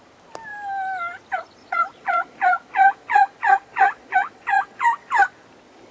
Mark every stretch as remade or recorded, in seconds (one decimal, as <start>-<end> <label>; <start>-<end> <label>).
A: 0.0-1.6 recorded; 1.6-5.1 remade; 5.1-5.9 recorded